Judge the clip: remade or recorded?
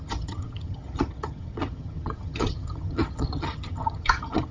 remade